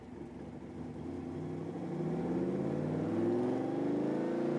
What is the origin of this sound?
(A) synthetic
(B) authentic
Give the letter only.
B